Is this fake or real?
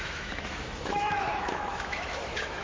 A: fake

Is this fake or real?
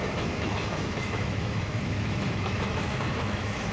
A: fake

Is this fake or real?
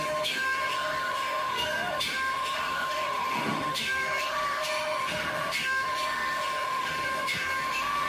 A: fake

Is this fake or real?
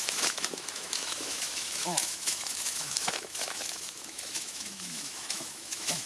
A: fake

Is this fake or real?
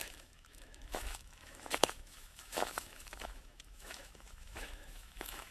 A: fake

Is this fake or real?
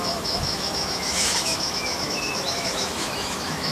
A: fake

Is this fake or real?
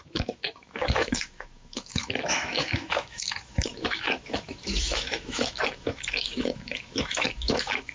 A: fake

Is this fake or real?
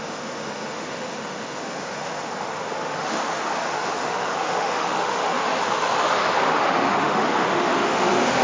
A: fake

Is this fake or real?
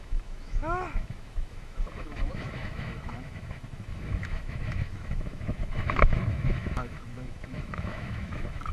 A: fake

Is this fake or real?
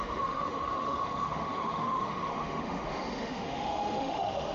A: fake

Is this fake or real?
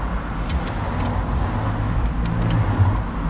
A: real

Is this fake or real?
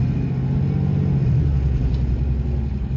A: real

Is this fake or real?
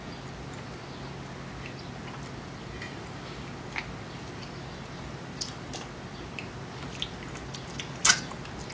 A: real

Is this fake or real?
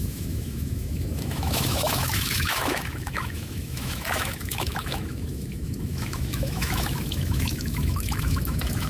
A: fake